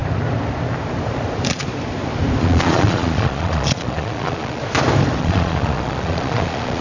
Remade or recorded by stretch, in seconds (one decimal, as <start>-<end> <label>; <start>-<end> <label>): 0.0-2.4 recorded; 2.4-4.6 remade; 4.6-5.2 recorded; 5.2-6.8 remade